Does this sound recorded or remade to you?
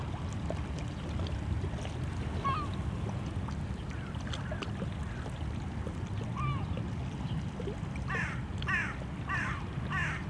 recorded